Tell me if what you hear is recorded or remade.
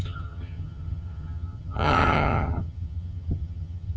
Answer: remade